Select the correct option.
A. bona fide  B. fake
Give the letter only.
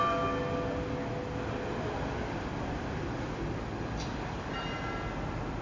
A